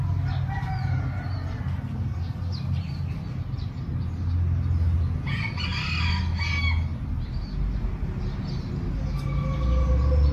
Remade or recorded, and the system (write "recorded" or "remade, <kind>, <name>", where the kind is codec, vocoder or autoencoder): recorded